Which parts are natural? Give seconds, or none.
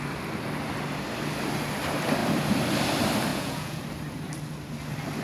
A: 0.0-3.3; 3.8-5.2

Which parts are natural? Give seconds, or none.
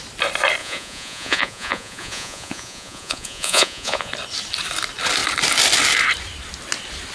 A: 0.0-0.6; 4.1-7.1